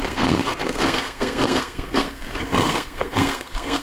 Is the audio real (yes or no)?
no